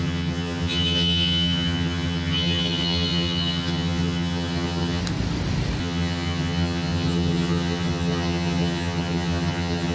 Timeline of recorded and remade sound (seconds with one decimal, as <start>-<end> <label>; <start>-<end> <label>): 0.0-5.0 remade; 5.0-5.8 recorded; 5.8-9.9 remade